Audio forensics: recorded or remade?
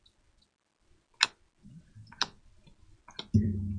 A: recorded